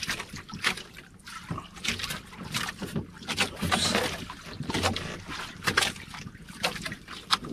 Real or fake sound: real